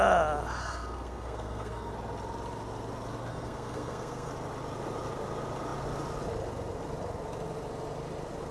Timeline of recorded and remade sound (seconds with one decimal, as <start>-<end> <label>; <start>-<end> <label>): 0.0-0.6 recorded; 0.6-1.9 remade; 1.9-3.3 recorded; 3.3-4.3 remade; 4.3-8.5 recorded